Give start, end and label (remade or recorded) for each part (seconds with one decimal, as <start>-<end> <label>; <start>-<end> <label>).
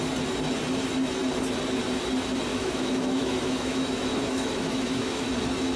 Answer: 0.0-2.5 recorded; 2.5-5.3 remade; 5.3-5.8 recorded